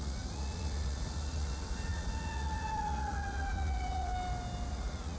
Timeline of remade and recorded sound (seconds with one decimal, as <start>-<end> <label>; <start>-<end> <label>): 0.0-4.1 remade; 4.1-4.7 recorded; 4.7-5.2 remade